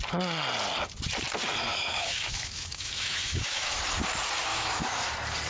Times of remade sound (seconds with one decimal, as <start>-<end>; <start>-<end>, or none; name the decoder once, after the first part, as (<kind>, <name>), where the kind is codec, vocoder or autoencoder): 1.7-3.8 (autoencoder, DAC-VAE); 4.5-5.1